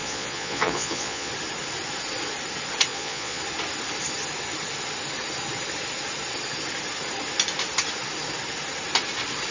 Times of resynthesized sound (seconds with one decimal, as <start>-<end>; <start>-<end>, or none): 0.0-1.3; 2.9-3.4